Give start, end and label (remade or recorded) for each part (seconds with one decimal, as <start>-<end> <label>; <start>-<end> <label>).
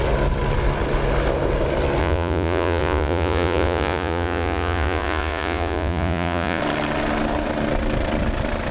0.0-2.0 recorded; 2.0-6.6 remade; 6.6-8.7 recorded